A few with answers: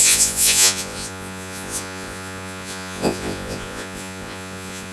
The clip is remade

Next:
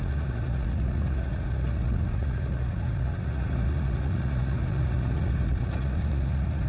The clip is remade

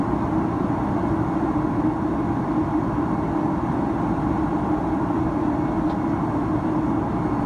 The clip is recorded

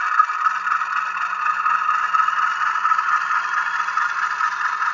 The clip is recorded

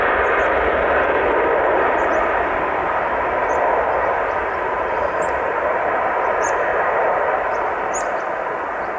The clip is recorded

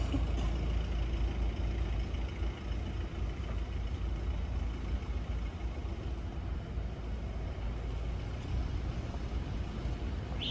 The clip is recorded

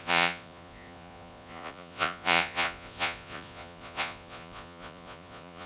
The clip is remade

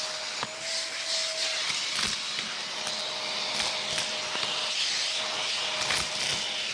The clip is recorded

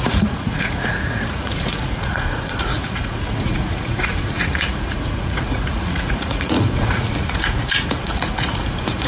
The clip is remade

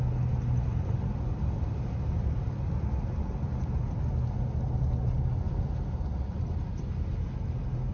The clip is recorded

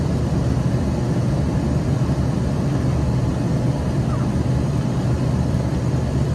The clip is recorded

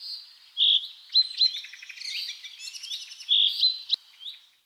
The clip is recorded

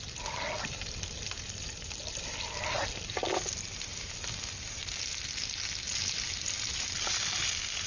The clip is recorded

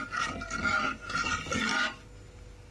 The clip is recorded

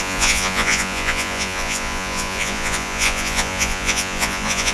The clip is remade